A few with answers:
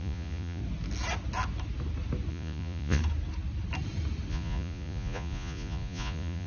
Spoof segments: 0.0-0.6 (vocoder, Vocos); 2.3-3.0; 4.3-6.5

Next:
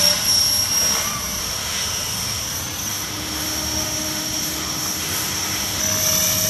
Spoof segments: 1.4-2.4 (autoencoder, DAC-VAE); 2.9-5.8

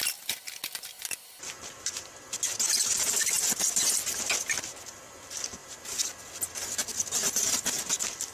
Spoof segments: none

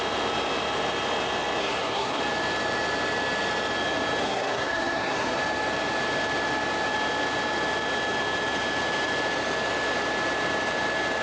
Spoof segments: 1.6-2.2 (codec, SNAC); 4.2-5.4

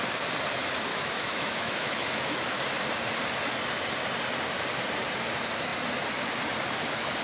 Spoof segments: 0.9-2.6 (autoencoder, DAC-VAE)

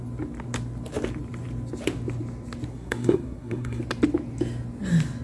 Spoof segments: 2.7-3.8 (codec, SNAC)

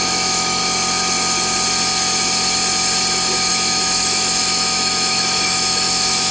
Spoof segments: 0.0-0.6 (autoencoder, DAC-VAE); 3.5-6.3

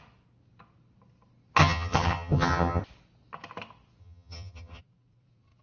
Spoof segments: 1.6-2.8 (vocoder, HiFi-GAN); 4.0-4.8